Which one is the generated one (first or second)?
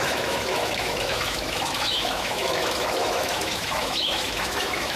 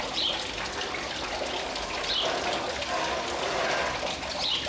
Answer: first